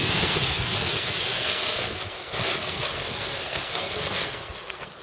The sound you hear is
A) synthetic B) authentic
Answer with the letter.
A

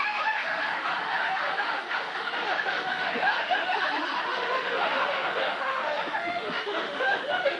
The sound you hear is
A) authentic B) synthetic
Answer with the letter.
B